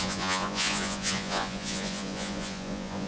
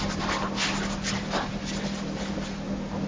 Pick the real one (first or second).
second